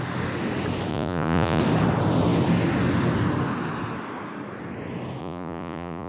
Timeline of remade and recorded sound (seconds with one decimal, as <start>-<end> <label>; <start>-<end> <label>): 0.0-0.9 recorded; 0.9-1.6 remade; 1.6-5.2 recorded; 5.2-6.1 remade